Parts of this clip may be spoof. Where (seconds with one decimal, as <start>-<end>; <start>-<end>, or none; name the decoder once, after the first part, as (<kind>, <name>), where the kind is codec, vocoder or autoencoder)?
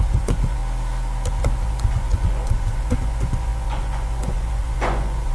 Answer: 0.0-0.6 (vocoder, Vocos); 1.4-5.3